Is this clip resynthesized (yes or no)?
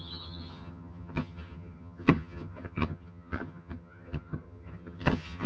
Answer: yes